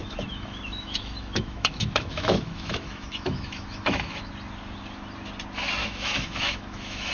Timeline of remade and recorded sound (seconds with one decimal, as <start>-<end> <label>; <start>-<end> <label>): 0.0-4.3 remade; 4.3-5.8 recorded; 5.8-7.1 remade